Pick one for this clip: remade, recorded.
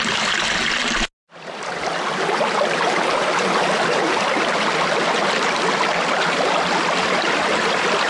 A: recorded